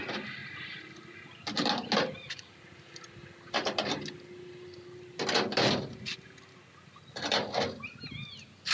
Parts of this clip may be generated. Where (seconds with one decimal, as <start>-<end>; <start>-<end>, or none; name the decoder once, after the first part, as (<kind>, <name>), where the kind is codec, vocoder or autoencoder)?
none